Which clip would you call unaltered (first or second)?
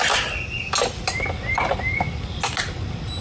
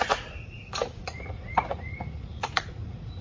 first